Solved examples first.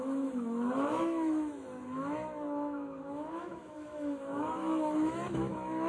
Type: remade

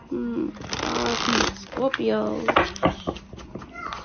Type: recorded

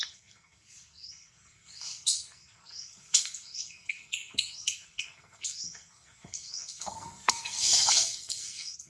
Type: remade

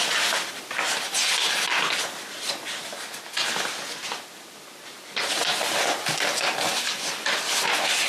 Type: recorded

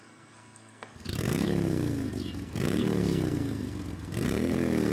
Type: remade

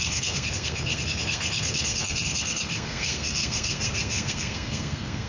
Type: remade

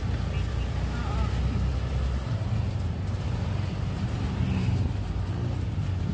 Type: recorded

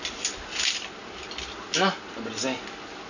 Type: recorded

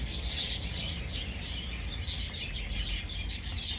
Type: recorded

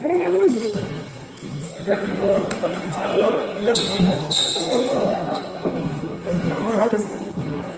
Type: remade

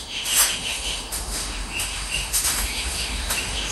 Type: remade